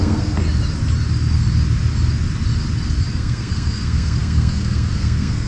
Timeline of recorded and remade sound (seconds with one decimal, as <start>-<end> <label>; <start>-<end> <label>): 0.0-0.4 remade; 0.4-3.1 recorded; 3.1-5.5 remade